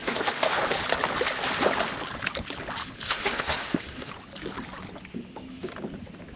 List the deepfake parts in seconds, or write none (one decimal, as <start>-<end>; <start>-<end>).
0.0-0.8; 2.8-4.1; 5.1-5.7